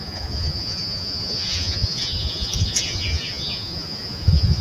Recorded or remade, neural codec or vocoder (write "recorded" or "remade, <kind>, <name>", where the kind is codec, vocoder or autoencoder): remade, vocoder, Vocos